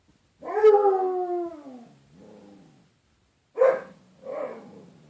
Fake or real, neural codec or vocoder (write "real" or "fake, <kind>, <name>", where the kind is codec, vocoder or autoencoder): real